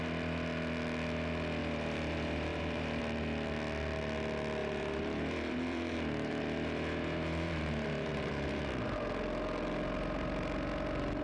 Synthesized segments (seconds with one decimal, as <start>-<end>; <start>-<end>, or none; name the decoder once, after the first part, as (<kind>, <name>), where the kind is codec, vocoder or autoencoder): 1.6-3.0 (vocoder, BigVGAN v2); 4.6-8.6